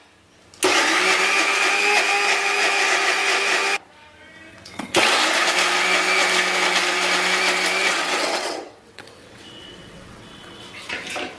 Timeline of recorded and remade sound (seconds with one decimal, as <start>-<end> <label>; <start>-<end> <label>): 0.0-4.5 recorded; 4.5-5.1 remade; 5.1-7.8 recorded; 7.8-10.9 remade; 10.9-11.4 recorded